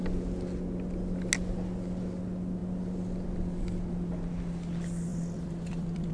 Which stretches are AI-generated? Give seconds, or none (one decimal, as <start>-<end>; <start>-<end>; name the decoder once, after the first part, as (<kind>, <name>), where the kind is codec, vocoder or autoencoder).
5.1-6.1 (vocoder, BigVGAN v2)